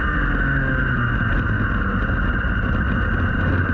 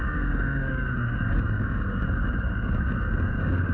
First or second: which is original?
first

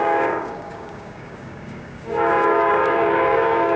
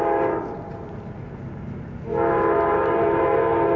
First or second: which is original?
second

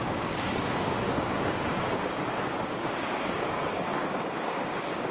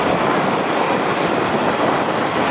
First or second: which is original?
second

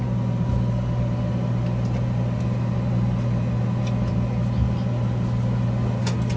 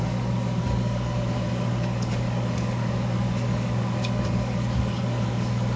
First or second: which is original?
first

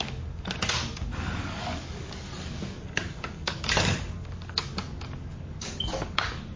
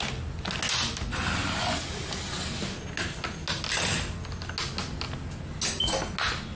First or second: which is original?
second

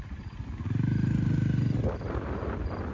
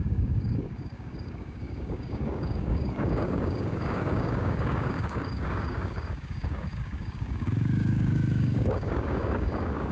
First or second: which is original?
first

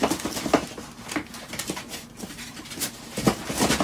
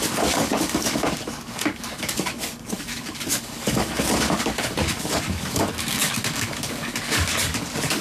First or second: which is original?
first